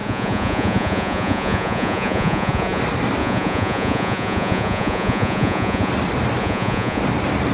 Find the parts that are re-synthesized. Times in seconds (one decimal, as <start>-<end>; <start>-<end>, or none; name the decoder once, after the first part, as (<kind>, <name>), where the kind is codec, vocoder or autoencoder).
0.0-2.8 (vocoder, Vocos); 3.2-5.9; 6.4-7.0